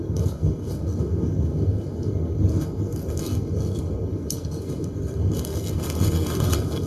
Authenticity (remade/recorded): remade